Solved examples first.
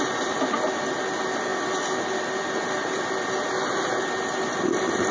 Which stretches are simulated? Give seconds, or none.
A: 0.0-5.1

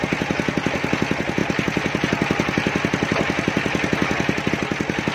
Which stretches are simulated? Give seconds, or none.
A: none

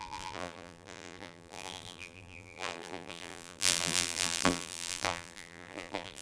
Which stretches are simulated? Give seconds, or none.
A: 0.0-6.2

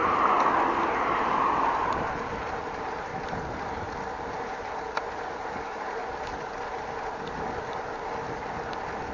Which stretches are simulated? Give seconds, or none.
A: 0.7-3.1; 4.4-6.0; 7.8-9.1

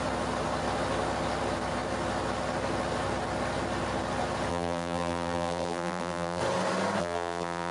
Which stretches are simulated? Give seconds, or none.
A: 4.5-6.4; 7.0-7.7

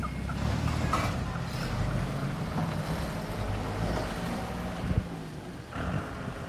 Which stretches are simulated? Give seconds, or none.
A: 0.0-2.2; 3.5-6.5